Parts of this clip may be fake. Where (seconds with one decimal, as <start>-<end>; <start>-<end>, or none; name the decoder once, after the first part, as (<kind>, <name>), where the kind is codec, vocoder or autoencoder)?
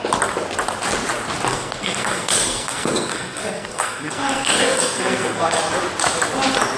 1.5-5.6 (codec, SNAC)